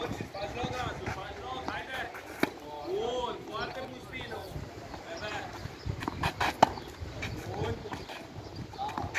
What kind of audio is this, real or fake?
real